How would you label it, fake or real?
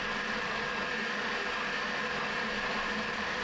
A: real